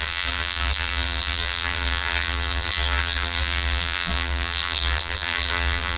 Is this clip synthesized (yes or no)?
yes